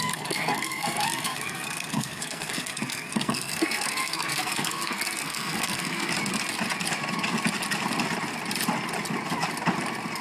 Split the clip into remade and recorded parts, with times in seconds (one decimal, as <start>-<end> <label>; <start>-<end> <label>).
0.0-6.1 remade; 6.1-10.2 recorded